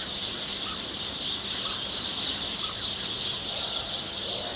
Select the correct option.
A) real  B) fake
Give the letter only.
A